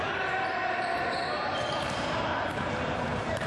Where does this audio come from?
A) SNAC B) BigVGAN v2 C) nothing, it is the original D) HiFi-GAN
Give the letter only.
B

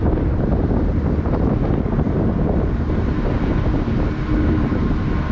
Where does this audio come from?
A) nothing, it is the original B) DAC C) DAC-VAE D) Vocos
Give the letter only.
A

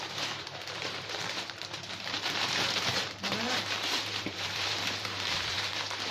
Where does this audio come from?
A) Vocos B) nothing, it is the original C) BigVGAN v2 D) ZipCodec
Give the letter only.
C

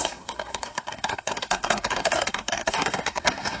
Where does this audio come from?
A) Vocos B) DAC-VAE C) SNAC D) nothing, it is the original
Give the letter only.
C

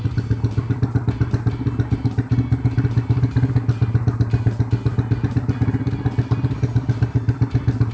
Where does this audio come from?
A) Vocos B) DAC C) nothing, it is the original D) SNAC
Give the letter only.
C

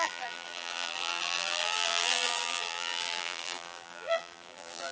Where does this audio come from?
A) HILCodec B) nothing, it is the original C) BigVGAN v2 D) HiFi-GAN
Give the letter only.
C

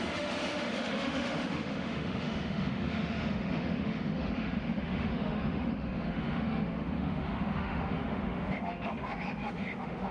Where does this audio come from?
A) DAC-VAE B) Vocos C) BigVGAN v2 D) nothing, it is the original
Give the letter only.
A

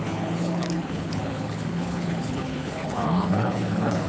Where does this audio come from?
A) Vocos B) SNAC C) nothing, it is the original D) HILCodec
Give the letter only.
D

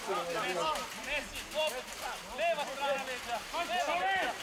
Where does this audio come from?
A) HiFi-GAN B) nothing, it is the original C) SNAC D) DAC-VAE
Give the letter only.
B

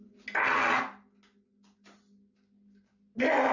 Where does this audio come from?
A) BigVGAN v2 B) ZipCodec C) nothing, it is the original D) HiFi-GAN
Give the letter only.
C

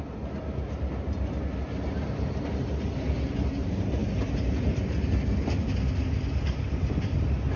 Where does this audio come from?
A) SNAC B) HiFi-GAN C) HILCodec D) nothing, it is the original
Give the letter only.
D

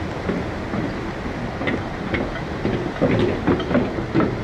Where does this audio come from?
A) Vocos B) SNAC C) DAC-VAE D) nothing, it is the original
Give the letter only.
D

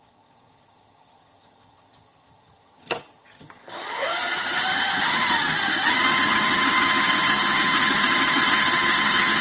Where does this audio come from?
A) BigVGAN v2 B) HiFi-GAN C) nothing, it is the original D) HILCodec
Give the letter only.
B